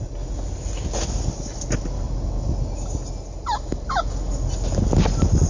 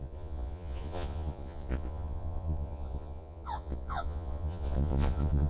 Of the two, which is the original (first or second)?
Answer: first